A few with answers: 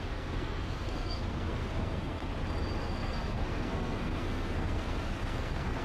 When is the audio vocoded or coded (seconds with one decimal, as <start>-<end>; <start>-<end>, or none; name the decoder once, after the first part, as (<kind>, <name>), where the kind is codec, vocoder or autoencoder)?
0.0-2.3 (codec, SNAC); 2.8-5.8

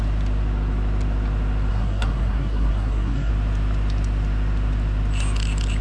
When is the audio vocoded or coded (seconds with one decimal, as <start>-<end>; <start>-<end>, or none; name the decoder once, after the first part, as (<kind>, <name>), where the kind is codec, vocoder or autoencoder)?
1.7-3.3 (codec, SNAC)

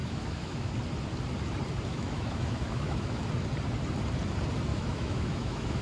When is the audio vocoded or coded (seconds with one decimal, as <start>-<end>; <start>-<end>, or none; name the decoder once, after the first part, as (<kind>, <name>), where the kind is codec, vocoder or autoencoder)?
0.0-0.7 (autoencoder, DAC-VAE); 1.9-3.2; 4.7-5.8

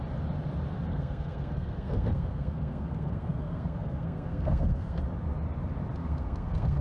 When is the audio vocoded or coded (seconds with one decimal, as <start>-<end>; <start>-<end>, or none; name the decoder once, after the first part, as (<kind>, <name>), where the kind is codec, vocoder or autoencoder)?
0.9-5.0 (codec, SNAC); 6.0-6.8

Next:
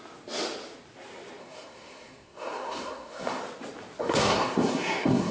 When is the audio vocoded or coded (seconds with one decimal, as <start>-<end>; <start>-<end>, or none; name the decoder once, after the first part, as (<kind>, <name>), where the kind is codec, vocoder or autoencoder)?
1.4-3.4 (codec, SNAC); 4.0-5.3